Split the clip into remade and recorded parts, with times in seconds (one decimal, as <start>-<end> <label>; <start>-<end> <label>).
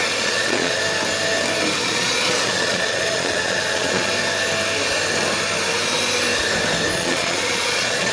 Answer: 0.0-0.8 remade; 0.8-1.8 recorded; 1.8-4.1 remade; 4.1-6.9 recorded; 6.9-8.1 remade